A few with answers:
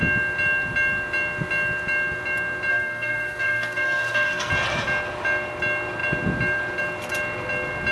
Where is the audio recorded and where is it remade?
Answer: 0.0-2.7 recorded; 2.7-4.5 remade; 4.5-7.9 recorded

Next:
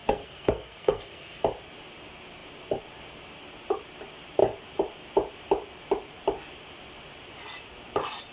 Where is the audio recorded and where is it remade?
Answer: 0.0-1.4 remade; 1.4-8.3 recorded